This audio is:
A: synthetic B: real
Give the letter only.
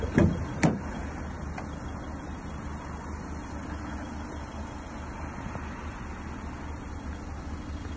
B